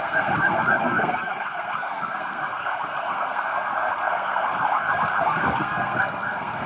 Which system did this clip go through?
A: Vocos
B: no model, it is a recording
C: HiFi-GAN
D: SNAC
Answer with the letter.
D